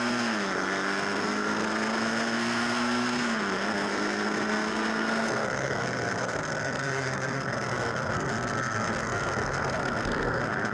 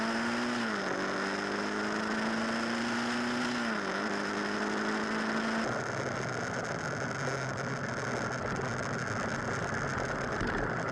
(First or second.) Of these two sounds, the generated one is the first